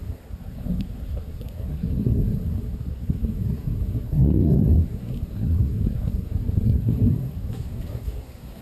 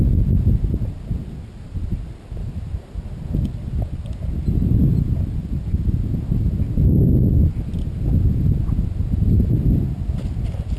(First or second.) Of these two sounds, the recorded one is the second